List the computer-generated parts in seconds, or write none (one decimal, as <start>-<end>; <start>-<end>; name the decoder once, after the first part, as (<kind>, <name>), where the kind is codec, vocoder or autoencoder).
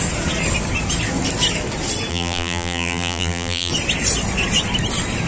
2.1-3.7 (vocoder, BigVGAN v2)